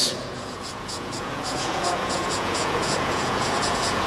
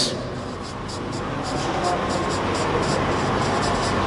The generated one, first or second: first